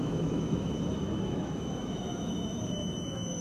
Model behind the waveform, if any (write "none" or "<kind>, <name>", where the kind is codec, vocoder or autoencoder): autoencoder, DAC-VAE